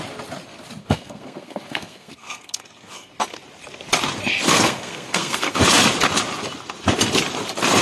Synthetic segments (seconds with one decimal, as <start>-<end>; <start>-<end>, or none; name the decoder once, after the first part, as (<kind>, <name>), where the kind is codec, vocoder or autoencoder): 0.8-3.1 (codec, SNAC); 4.5-5.6